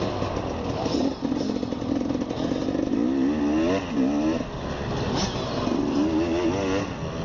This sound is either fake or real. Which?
real